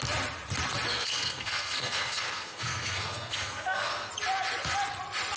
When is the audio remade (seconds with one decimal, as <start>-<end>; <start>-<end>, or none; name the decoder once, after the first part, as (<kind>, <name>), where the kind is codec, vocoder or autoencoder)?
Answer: 0.9-4.1 (codec, SNAC)